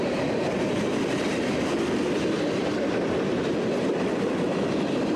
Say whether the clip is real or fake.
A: fake